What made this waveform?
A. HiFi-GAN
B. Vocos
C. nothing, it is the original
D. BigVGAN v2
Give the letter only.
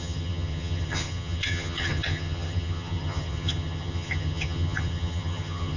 A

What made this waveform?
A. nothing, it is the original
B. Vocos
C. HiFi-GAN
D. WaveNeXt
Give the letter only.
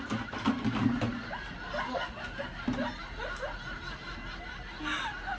A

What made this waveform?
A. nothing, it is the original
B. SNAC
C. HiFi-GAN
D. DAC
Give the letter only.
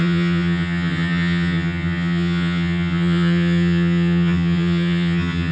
C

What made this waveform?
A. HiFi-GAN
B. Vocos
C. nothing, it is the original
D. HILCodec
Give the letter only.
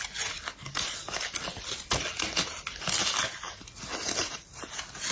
C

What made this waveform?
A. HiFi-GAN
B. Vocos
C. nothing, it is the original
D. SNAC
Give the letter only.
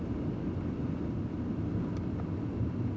C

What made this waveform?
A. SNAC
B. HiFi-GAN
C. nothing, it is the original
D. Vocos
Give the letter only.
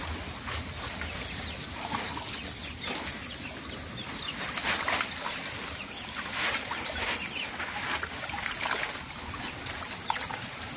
C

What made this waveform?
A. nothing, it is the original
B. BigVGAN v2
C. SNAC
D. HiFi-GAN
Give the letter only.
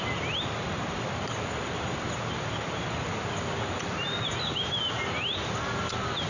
A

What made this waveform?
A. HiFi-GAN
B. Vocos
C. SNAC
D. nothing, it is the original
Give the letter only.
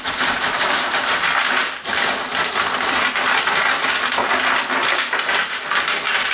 D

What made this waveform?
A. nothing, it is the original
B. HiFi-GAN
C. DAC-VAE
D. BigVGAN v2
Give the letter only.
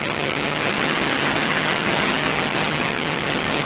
B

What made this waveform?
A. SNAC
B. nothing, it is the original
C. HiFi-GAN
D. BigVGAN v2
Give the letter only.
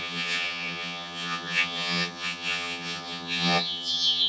C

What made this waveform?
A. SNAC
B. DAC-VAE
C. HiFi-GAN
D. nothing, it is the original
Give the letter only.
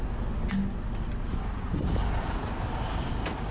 D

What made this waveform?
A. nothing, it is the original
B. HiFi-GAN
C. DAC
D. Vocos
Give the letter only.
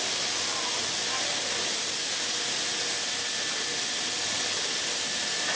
A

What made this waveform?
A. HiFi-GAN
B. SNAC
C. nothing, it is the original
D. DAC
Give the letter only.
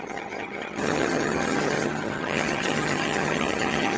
A